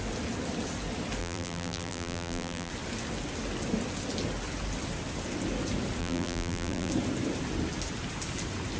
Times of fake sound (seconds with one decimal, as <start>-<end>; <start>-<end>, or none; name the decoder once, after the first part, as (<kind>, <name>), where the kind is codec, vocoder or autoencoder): 1.2-2.7 (vocoder, BigVGAN v2); 6.0-6.9